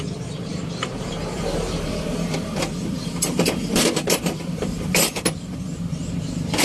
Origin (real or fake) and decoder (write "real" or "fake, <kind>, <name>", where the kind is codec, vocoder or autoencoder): fake, vocoder, BigVGAN v2